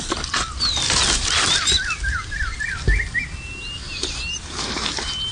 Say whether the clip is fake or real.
real